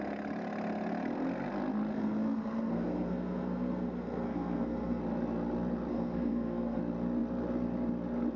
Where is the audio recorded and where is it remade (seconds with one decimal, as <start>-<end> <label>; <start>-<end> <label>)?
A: 0.0-1.9 recorded; 1.9-5.0 remade; 5.0-5.9 recorded; 5.9-6.8 remade; 6.8-8.4 recorded